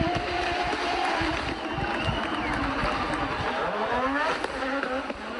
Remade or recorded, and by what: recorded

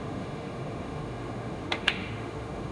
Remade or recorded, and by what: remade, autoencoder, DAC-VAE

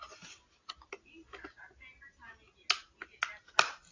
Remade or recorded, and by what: recorded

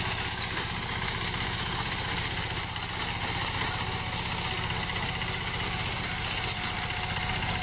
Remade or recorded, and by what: recorded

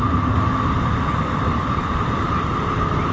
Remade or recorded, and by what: recorded